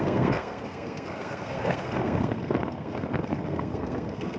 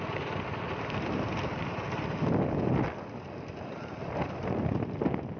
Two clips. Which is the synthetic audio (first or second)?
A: first